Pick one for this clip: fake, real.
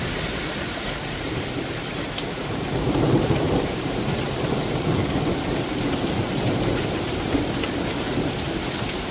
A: fake